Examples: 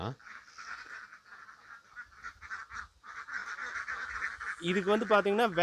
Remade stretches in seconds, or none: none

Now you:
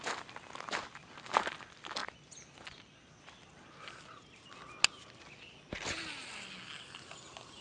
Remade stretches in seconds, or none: none

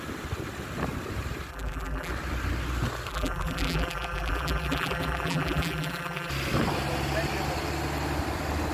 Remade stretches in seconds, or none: 1.5-2.1 (vocoder, BigVGAN v2); 3.1-6.3